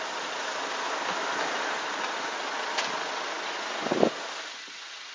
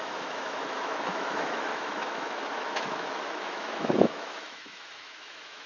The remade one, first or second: second